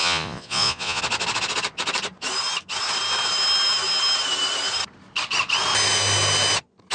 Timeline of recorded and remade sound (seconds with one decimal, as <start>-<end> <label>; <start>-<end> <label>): 0.0-1.0 remade; 1.0-6.9 recorded